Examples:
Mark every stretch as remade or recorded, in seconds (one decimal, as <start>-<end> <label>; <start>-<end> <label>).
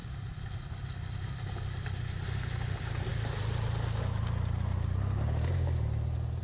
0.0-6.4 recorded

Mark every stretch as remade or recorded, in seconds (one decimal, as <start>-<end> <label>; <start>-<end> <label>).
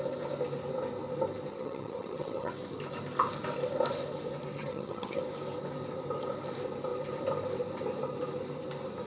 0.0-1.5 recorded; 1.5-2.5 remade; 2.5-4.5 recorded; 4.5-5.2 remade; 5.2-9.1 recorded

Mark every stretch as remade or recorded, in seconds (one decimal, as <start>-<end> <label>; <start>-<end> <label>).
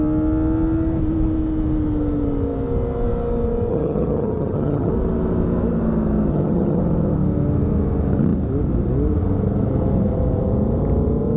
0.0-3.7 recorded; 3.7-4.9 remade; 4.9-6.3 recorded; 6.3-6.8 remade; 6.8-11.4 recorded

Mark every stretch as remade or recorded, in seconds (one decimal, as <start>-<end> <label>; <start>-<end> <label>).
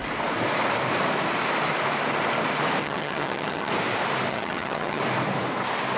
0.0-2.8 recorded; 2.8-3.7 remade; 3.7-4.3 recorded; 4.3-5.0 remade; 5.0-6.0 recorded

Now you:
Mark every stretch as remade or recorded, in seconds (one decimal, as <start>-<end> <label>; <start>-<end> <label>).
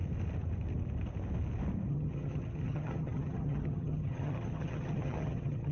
0.0-1.9 recorded; 1.9-5.7 remade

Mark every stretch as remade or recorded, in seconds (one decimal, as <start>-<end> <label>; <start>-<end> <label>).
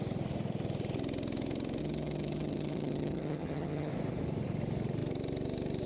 0.0-1.8 recorded; 1.8-3.9 remade; 3.9-5.9 recorded